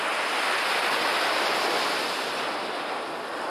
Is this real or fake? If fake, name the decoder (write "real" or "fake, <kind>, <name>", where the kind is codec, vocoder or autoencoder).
real